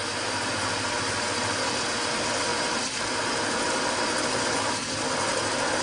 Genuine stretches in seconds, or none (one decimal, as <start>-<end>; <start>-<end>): 0.0-5.8